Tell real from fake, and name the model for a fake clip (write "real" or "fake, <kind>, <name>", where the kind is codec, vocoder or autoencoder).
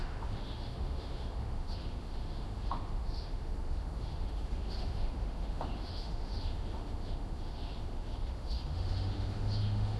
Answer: fake, autoencoder, DAC-VAE